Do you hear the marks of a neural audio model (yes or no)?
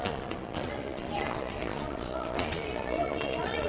yes